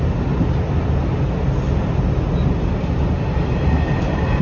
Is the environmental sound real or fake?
real